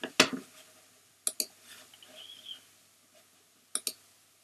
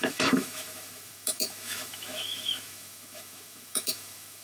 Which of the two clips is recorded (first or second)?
first